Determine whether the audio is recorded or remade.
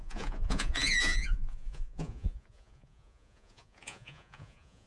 remade